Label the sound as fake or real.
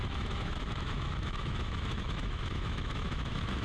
fake